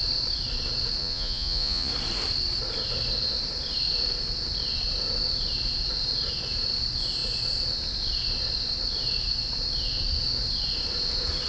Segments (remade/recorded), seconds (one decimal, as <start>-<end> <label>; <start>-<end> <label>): 0.0-1.0 recorded; 1.0-1.9 remade; 1.9-11.5 recorded